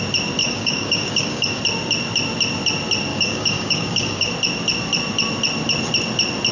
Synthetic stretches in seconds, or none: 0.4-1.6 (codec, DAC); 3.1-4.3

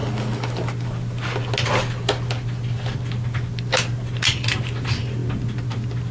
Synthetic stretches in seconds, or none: none

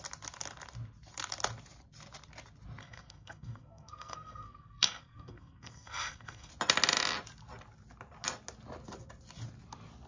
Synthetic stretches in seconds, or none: 2.8-6.5 (codec, SNAC)

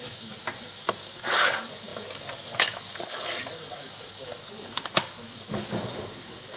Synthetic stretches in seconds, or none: 0.0-6.6 (codec, DAC)